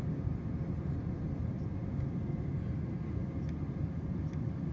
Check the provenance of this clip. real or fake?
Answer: real